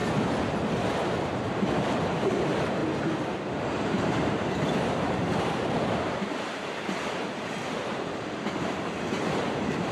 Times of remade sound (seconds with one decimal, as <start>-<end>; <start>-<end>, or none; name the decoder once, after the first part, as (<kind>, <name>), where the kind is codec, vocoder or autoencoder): 1.2-2.8 (vocoder, BigVGAN v2); 3.4-9.9